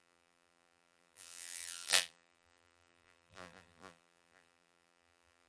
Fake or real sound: fake